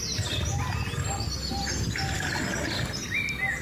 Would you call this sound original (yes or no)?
yes